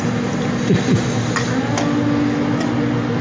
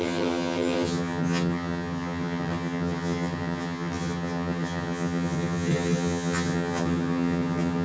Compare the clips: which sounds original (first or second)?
first